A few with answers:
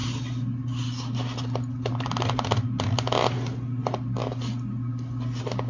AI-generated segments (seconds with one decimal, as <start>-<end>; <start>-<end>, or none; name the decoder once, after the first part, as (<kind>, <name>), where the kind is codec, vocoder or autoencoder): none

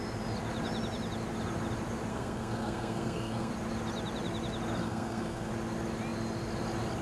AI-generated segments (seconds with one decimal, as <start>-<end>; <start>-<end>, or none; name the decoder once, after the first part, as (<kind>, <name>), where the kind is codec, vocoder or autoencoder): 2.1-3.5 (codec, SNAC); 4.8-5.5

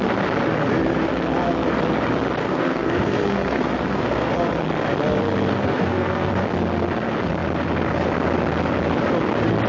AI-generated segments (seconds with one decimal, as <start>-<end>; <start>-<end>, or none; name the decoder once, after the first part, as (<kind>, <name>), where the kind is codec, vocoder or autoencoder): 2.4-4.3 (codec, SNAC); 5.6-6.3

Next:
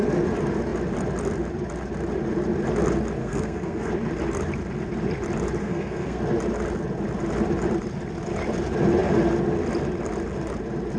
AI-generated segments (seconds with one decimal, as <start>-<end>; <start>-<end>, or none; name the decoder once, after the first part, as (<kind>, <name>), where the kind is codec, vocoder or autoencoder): 3.2-3.9 (codec, SNAC); 5.6-6.2